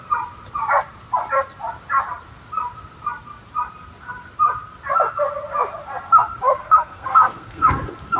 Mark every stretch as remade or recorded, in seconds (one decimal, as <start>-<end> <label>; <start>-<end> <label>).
0.0-6.6 recorded; 6.6-7.7 remade; 7.7-8.2 recorded